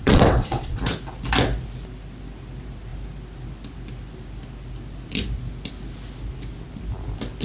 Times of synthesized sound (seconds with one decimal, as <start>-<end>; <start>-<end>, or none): 0.0-0.8